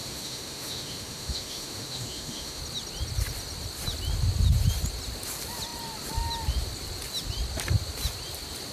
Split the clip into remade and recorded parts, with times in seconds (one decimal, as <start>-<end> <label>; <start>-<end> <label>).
0.0-2.6 remade; 2.6-8.7 recorded